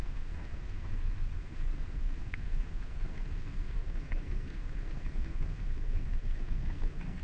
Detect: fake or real fake